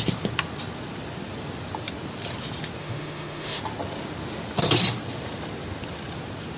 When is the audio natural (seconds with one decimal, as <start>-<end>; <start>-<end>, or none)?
0.0-2.8; 3.6-6.6